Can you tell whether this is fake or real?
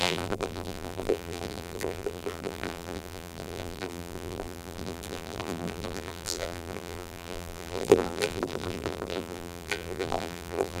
fake